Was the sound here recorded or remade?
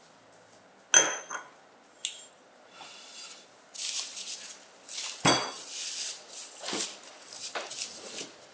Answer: recorded